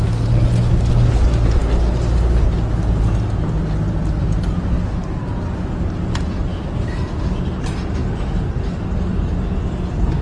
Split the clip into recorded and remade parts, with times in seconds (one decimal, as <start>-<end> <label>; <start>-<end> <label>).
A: 0.0-10.2 recorded

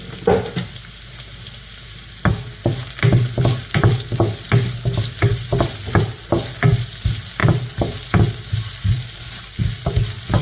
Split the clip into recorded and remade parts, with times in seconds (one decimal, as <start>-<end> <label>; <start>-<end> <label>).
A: 0.0-10.4 recorded